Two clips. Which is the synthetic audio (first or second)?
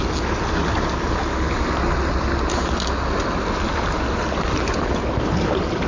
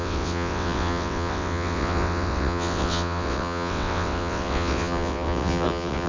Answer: second